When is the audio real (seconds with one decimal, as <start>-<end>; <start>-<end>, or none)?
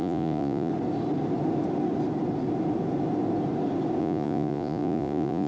0.7-4.0